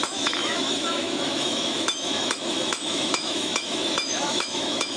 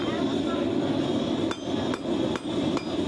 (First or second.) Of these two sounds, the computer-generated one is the first